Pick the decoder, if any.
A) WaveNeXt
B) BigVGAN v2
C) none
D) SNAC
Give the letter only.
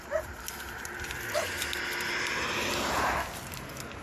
C